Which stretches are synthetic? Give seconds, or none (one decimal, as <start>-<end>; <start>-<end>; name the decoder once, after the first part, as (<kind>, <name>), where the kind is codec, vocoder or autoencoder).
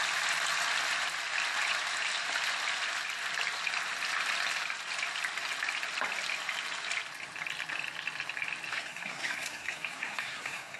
8.7-10.8 (codec, SNAC)